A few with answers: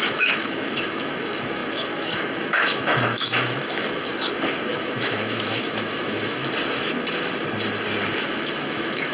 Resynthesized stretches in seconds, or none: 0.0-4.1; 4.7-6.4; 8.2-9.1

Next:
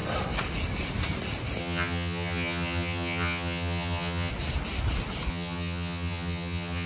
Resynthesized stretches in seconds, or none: 1.6-4.3; 5.3-6.9

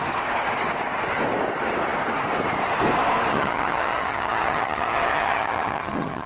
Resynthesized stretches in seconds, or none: 3.3-6.3

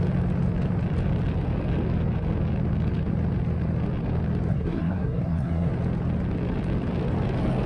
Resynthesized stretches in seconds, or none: 4.5-5.7

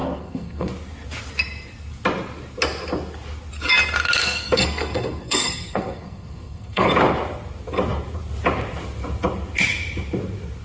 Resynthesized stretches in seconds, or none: 0.0-0.7; 4.2-6.9

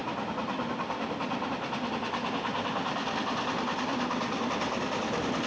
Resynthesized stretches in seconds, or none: none

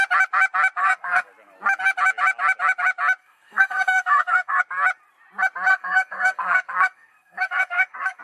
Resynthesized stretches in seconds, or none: 0.8-1.3; 3.2-4.6; 5.7-8.2

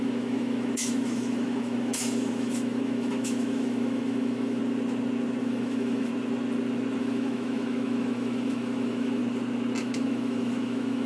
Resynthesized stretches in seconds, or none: 0.0-4.6; 5.4-6.1; 7.0-9.2; 9.8-11.1